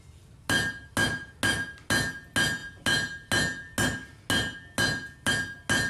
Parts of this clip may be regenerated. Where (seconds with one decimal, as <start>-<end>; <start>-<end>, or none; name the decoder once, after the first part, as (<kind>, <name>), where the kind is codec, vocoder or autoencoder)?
none